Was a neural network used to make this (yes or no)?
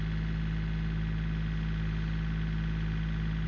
no